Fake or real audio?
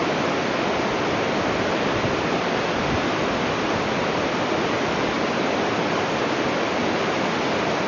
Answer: real